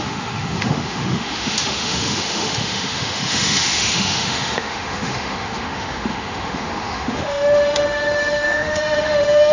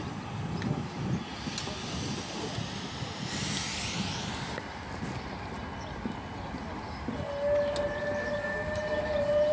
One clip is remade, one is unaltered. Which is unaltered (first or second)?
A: second